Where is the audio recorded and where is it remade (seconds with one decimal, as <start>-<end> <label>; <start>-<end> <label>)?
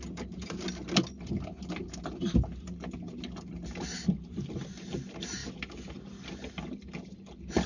0.0-7.7 recorded